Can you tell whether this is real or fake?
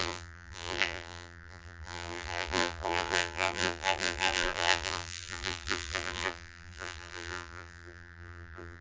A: fake